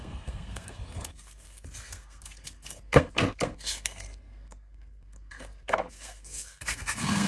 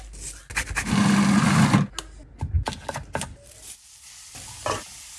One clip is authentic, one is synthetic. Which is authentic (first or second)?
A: second